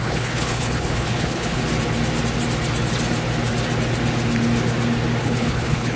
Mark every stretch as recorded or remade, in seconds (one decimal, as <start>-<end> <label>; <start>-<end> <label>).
0.0-1.6 remade; 1.6-5.2 recorded; 5.2-6.0 remade